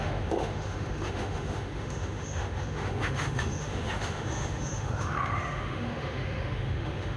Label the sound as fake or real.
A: fake